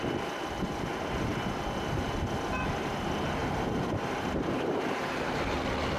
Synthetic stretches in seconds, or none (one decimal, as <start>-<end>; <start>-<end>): 3.4-5.5